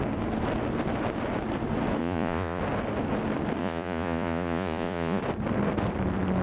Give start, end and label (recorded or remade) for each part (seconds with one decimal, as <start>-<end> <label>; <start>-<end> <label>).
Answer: 0.0-2.0 recorded; 2.0-2.6 remade; 2.6-3.6 recorded; 3.6-5.2 remade; 5.2-6.4 recorded